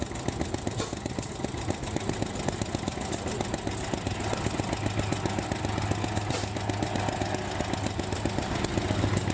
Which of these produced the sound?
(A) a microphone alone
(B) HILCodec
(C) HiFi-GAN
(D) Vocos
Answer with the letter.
A